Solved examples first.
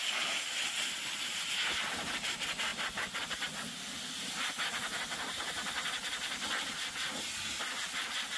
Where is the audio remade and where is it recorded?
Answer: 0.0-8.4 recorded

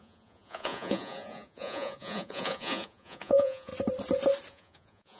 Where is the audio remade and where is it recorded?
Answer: 0.0-3.7 remade; 3.7-4.5 recorded; 4.5-5.2 remade